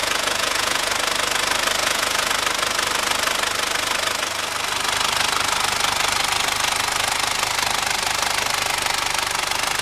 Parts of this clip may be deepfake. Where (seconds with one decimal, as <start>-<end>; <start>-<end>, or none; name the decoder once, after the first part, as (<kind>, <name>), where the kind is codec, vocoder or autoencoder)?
0.0-0.9 (vocoder, Vocos); 1.8-2.3

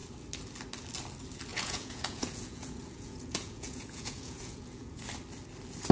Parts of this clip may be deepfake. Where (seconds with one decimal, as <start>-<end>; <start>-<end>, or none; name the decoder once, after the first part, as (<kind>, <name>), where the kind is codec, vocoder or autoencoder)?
1.5-5.0 (vocoder, Vocos)

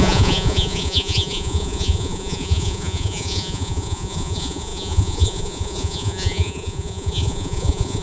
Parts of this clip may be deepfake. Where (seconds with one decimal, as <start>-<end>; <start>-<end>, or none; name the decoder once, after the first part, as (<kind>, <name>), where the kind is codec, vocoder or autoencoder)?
0.0-8.0 (vocoder, Vocos)

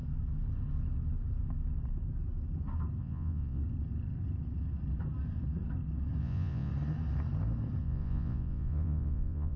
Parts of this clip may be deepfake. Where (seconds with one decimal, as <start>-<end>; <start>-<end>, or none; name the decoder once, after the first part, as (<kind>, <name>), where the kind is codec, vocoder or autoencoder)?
3.0-3.6 (vocoder, Vocos); 6.2-6.7; 7.8-9.6